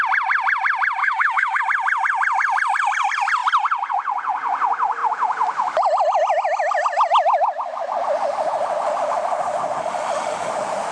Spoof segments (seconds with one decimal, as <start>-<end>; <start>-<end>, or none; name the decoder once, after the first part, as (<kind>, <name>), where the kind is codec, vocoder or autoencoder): 1.0-1.6 (autoencoder, DAC-VAE); 9.8-10.5